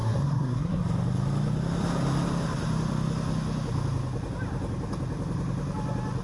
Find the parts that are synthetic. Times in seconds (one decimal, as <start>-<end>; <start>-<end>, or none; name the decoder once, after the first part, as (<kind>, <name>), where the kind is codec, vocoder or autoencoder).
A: 0.0-0.8 (codec, SNAC)